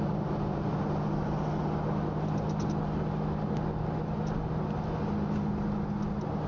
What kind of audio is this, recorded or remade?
recorded